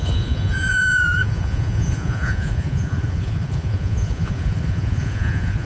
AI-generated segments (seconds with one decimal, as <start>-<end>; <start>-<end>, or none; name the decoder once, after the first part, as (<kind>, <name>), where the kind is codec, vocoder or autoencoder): 0.0-5.6 (vocoder, Vocos)